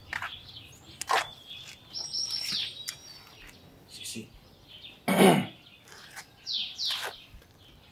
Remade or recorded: recorded